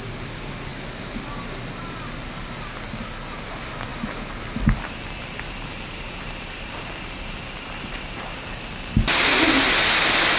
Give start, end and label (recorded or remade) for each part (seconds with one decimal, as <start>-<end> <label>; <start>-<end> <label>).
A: 0.0-10.4 recorded

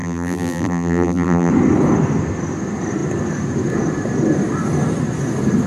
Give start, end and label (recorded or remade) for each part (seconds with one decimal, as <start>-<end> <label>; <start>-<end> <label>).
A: 0.0-1.5 remade; 1.5-5.7 recorded

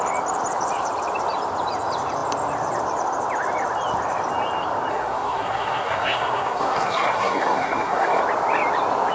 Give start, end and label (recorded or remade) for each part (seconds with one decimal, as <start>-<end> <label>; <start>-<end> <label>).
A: 0.0-4.9 recorded; 4.9-8.2 remade; 8.2-9.1 recorded

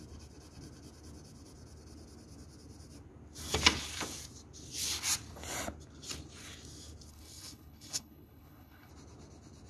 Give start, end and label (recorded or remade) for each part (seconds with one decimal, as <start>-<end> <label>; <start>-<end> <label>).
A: 0.0-7.1 recorded; 7.1-8.9 remade; 8.9-9.7 recorded

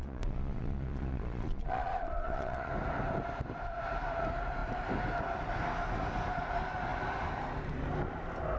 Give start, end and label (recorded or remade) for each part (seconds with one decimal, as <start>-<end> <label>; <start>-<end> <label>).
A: 0.0-2.7 remade; 2.7-8.6 recorded

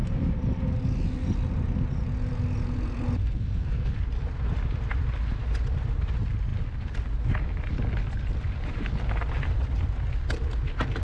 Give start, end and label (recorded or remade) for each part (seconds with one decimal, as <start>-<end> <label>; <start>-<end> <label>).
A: 0.0-3.2 recorded; 3.2-3.9 remade; 3.9-11.0 recorded

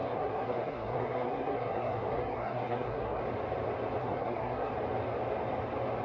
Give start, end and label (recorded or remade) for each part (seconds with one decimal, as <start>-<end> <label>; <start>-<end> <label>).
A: 0.0-3.2 remade; 3.2-4.0 recorded; 4.0-4.7 remade; 4.7-6.0 recorded

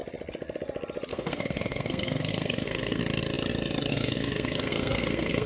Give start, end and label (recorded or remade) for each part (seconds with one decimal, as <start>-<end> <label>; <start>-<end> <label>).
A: 0.0-1.1 recorded; 1.1-3.0 remade; 3.0-3.9 recorded; 3.9-5.5 remade